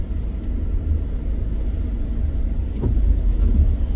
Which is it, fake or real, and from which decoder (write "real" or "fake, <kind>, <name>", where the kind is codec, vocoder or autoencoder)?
real